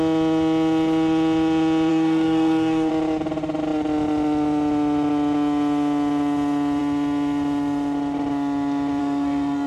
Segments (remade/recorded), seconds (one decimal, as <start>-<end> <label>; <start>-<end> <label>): 0.0-1.9 recorded; 1.9-2.9 remade; 2.9-9.0 recorded; 9.0-9.7 remade